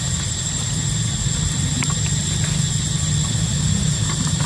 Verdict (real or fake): real